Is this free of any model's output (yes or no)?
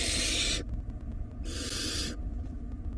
yes